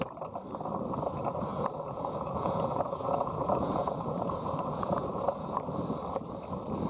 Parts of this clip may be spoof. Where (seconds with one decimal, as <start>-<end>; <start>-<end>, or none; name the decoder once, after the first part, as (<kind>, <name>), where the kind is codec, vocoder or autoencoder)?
1.5-5.6 (vocoder, Vocos)